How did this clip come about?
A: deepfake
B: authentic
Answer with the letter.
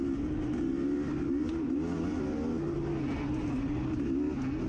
B